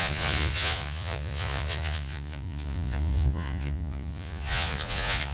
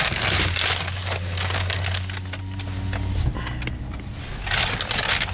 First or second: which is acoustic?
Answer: second